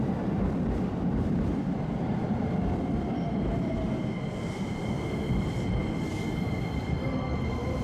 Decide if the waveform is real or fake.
fake